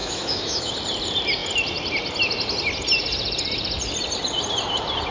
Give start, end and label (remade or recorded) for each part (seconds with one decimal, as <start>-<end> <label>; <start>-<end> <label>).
0.0-0.7 remade; 0.7-5.1 recorded